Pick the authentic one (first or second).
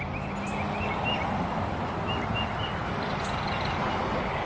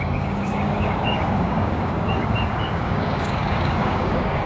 first